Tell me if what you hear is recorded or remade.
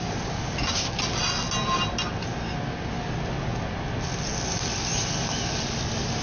recorded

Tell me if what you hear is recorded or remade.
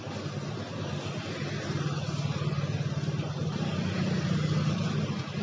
recorded